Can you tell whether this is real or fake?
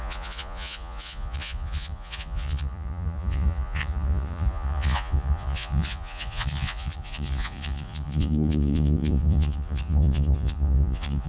fake